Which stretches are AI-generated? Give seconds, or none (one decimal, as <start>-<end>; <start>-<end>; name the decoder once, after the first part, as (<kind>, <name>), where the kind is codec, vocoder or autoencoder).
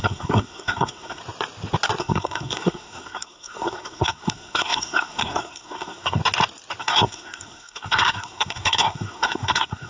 0.0-1.2 (codec, SNAC); 2.0-6.2; 6.8-9.9